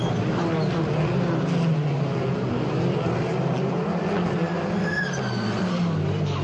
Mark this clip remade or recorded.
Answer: recorded